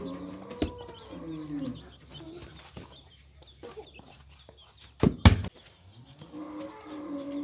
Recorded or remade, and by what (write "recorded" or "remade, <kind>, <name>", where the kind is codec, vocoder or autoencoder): recorded